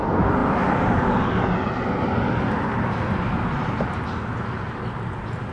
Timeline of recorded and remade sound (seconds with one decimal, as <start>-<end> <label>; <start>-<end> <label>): 0.0-5.5 recorded

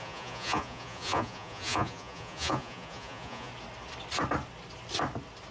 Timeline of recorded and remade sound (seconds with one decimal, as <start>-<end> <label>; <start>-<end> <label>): 0.0-3.5 remade; 3.5-5.5 recorded

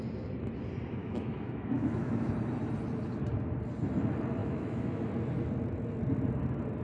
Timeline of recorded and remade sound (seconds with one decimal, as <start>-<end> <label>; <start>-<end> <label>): 0.0-1.0 recorded; 1.0-2.3 remade; 2.3-4.4 recorded; 4.4-5.1 remade; 5.1-6.8 recorded

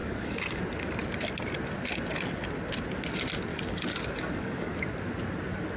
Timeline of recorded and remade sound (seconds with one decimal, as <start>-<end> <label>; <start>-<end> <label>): 0.0-0.6 remade; 0.6-3.5 recorded; 3.5-4.8 remade; 4.8-5.8 recorded

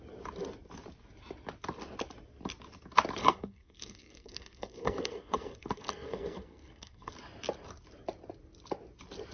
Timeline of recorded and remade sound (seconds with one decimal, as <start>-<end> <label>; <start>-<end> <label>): 0.0-3.2 recorded; 3.2-7.1 remade; 7.1-9.3 recorded

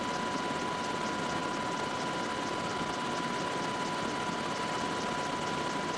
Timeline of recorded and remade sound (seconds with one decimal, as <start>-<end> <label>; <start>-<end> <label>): 0.0-6.0 recorded

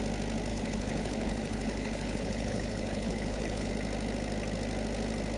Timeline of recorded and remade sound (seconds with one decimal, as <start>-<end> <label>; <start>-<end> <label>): 0.0-0.5 recorded; 0.5-3.7 remade; 3.7-5.4 recorded

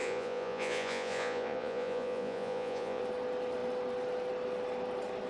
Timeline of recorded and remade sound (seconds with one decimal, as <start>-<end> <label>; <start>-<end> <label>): 0.0-3.0 remade; 3.0-5.3 recorded